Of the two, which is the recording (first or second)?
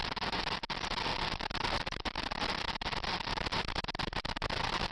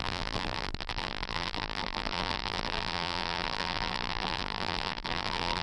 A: first